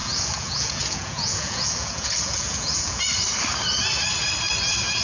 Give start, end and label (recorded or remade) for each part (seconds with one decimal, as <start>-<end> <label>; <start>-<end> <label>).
0.0-3.0 remade; 3.0-5.0 recorded